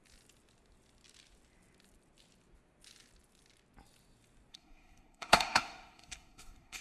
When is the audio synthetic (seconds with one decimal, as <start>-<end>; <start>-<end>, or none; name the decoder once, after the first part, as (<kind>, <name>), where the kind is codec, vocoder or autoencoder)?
4.5-6.8 (codec, SNAC)